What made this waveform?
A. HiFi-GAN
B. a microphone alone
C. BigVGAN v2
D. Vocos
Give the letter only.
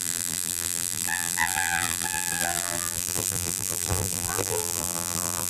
C